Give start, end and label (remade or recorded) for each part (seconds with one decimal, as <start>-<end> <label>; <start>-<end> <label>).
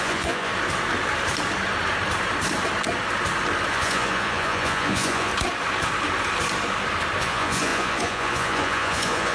0.0-0.5 remade; 0.5-3.7 recorded; 3.7-5.3 remade; 5.3-7.2 recorded; 7.2-9.3 remade